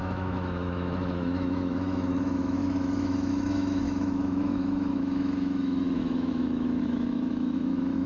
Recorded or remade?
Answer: remade